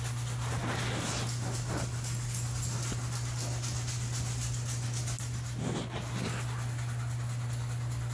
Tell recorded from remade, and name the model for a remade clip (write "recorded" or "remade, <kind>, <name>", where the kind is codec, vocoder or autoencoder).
recorded